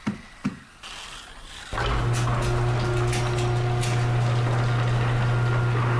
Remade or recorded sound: recorded